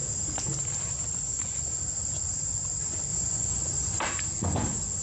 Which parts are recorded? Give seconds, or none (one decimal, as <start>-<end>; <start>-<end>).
0.0-1.1; 1.7-3.1; 4.0-5.0